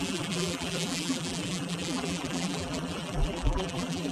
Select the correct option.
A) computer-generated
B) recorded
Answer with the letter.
A